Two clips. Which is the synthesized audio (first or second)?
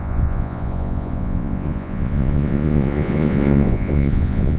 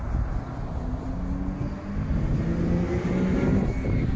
first